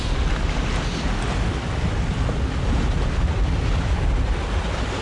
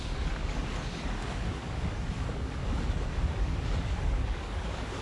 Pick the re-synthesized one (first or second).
second